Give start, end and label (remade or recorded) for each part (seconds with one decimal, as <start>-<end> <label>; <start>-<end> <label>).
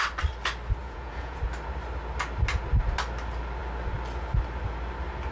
0.0-0.8 recorded; 0.8-1.4 remade; 1.4-5.3 recorded